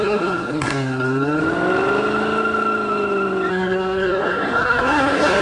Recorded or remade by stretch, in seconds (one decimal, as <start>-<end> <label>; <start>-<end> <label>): 0.0-1.4 remade; 1.4-3.5 recorded; 3.5-5.4 remade